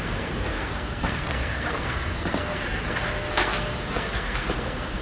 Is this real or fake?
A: fake